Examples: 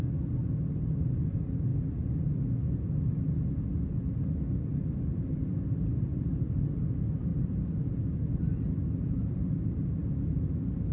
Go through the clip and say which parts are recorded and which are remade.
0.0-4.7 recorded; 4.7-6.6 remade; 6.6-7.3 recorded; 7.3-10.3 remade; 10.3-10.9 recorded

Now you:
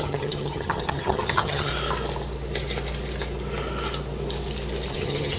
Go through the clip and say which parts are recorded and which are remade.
0.0-1.7 remade; 1.7-4.9 recorded; 4.9-5.4 remade